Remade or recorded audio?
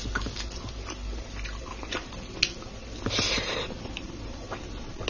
recorded